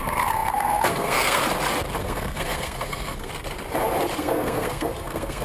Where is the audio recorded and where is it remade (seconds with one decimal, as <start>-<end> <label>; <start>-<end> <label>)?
0.0-1.4 remade; 1.4-2.0 recorded; 2.0-3.3 remade; 3.3-4.2 recorded; 4.2-5.4 remade